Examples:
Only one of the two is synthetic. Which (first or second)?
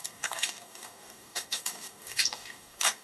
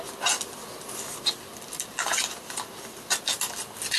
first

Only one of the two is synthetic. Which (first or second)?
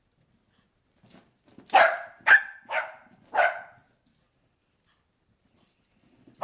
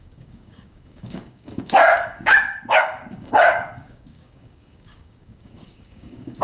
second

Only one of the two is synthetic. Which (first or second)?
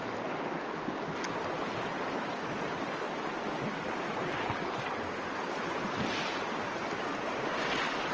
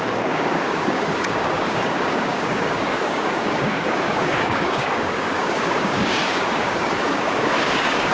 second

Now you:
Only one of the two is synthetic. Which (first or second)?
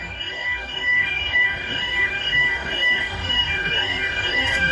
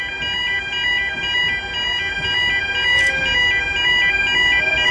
first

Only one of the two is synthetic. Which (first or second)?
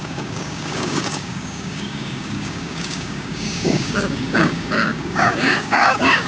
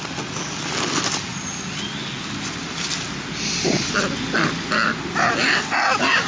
first